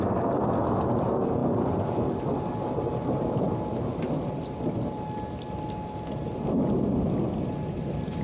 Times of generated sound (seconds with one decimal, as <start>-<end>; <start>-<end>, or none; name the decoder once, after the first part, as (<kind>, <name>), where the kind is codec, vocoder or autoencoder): none